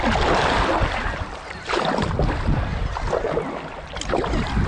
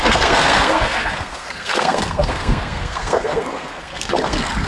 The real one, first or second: first